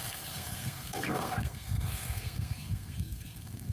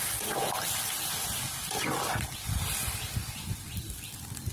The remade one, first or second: first